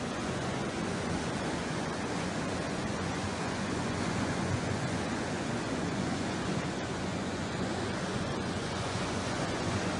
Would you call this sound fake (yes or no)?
yes